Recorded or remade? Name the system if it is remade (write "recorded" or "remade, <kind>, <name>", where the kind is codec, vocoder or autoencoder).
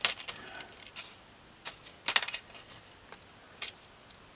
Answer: recorded